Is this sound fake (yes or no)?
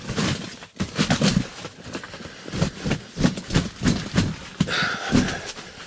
no